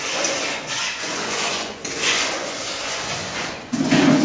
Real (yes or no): no